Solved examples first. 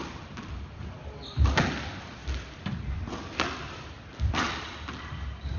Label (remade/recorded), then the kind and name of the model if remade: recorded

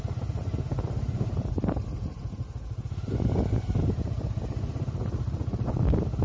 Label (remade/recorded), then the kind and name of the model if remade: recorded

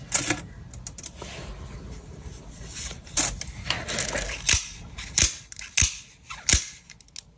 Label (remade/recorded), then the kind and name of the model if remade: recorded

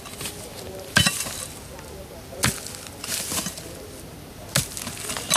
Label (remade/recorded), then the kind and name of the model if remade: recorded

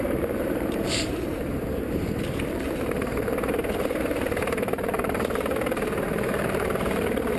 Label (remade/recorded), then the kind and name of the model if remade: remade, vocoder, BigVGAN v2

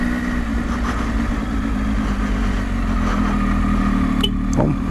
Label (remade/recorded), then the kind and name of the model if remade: recorded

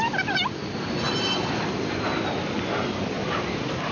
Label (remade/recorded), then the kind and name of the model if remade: recorded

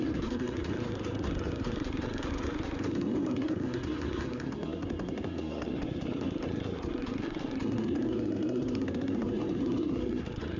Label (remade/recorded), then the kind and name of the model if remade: remade, codec, SNAC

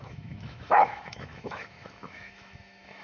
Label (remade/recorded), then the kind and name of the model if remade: remade, autoencoder, DAC-VAE